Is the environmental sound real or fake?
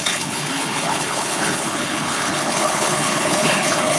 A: fake